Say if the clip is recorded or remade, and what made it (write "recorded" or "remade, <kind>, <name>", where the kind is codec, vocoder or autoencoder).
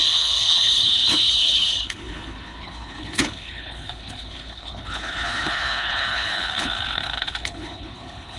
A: remade, codec, HILCodec